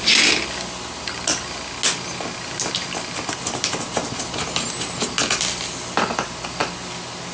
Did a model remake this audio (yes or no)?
no